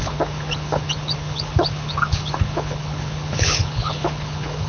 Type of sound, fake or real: fake